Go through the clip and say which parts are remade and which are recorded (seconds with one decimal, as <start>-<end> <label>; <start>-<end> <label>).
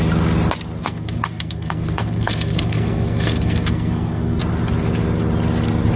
0.0-0.8 recorded; 0.8-4.4 remade; 4.4-6.0 recorded